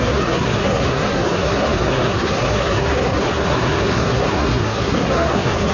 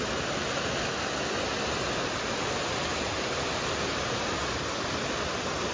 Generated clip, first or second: first